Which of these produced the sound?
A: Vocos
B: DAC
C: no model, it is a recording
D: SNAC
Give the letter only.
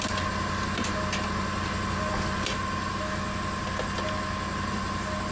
C